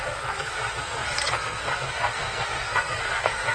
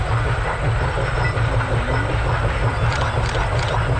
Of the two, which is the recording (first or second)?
second